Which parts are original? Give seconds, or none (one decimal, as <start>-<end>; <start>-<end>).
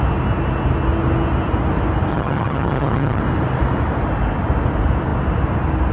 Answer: 0.0-2.1; 3.2-5.9